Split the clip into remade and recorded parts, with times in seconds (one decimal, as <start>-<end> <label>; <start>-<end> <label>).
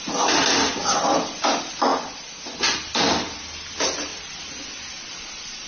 0.0-5.7 recorded